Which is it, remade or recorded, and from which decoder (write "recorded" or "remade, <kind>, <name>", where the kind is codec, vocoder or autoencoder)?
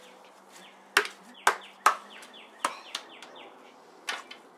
recorded